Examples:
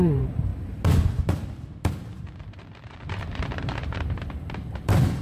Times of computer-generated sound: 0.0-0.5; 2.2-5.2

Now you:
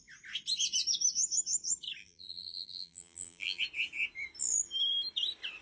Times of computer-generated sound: 2.0-3.6

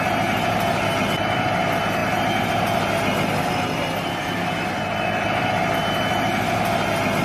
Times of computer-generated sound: none

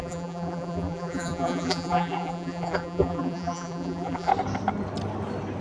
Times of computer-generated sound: 0.0-4.3

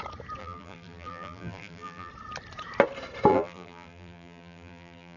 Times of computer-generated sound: 0.4-2.1; 3.3-5.2

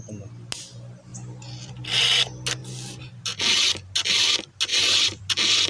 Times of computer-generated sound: 1.1-2.0; 4.7-5.2